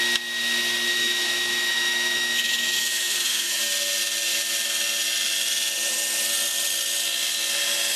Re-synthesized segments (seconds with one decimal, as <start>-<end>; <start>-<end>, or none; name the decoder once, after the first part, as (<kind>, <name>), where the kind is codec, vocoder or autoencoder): 0.9-3.6 (autoencoder, DAC-VAE)